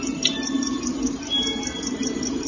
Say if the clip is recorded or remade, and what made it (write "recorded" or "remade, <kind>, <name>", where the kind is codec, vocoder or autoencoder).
recorded